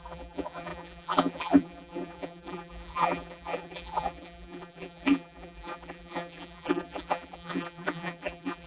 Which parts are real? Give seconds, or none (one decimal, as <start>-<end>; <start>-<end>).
none